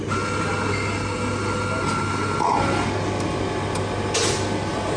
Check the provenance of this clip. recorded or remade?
recorded